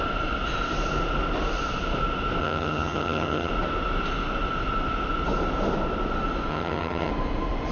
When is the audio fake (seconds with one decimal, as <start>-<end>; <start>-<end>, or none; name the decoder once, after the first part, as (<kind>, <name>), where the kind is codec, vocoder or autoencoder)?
2.4-3.5 (vocoder, HiFi-GAN); 6.5-7.1